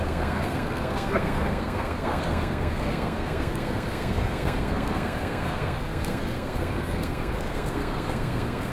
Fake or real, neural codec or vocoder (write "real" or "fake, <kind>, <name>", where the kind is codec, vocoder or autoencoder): fake, codec, SNAC